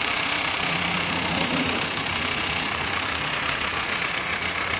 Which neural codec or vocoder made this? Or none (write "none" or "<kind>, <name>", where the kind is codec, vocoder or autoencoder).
vocoder, Vocos